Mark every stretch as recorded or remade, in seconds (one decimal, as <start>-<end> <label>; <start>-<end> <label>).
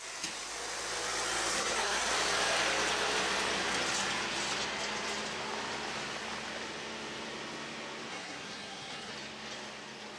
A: 0.0-1.5 recorded; 1.5-2.1 remade; 2.1-8.1 recorded; 8.1-9.1 remade; 9.1-10.2 recorded